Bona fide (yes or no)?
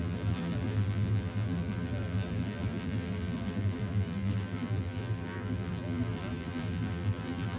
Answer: no